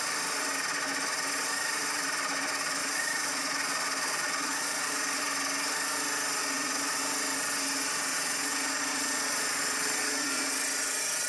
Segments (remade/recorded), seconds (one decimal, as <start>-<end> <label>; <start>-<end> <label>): 0.0-2.8 recorded; 2.8-5.2 remade; 5.2-6.4 recorded; 6.4-7.0 remade; 7.0-8.1 recorded; 8.1-10.5 remade; 10.5-11.3 recorded